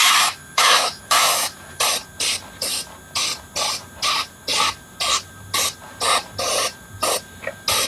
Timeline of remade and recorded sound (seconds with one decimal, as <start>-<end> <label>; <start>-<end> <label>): 0.0-1.8 remade; 1.8-7.9 recorded